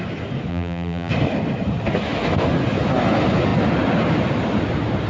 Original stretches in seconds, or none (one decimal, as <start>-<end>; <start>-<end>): 0.0-0.5; 1.1-5.1